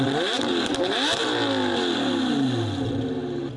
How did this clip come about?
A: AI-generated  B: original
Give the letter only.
B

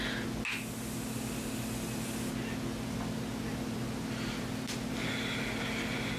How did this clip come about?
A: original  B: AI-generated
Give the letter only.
A